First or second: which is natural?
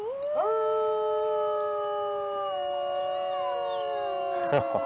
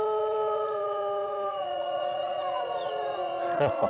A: first